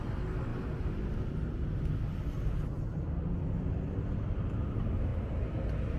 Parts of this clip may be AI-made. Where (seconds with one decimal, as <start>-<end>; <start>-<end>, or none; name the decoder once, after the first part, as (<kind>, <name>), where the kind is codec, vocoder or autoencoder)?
none